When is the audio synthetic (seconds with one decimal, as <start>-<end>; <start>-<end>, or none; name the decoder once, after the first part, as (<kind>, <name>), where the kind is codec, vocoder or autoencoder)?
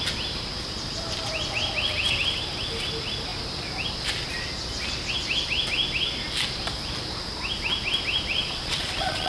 8.4-9.3 (vocoder, Vocos)